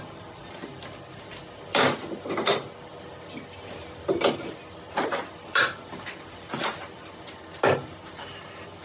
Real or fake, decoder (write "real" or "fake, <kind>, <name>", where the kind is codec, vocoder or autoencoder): fake, vocoder, BigVGAN v2